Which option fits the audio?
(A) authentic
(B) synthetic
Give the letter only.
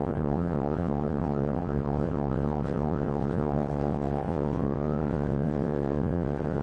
B